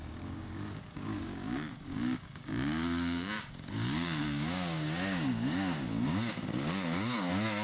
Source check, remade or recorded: remade